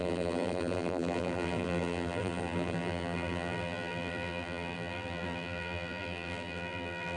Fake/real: fake